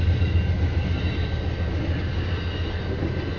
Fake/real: real